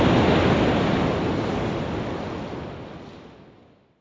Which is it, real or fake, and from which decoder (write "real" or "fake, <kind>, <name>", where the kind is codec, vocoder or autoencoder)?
real